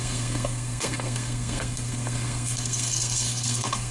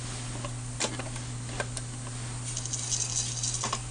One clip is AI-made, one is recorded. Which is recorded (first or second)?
second